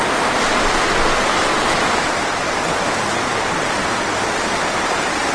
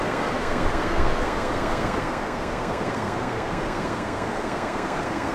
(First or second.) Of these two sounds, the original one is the first